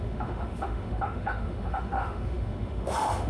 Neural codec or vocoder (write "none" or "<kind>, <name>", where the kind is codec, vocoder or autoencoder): autoencoder, DAC-VAE